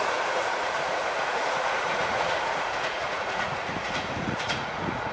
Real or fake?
fake